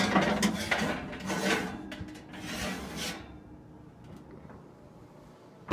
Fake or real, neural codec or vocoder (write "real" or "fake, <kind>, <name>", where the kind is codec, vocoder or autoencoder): real